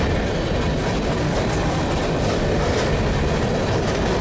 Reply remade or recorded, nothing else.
recorded